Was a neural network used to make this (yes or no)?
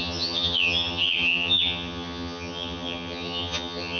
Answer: yes